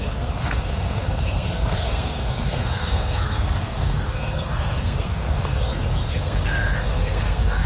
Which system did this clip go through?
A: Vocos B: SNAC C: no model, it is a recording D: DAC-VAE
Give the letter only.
B